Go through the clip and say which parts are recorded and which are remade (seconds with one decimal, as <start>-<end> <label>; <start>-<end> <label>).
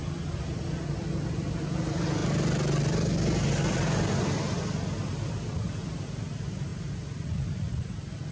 0.0-8.3 recorded